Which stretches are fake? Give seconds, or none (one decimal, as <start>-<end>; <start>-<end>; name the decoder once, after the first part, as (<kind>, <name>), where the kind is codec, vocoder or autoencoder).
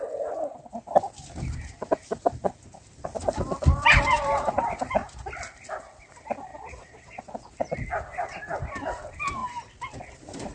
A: 6.5-7.2 (vocoder, Vocos)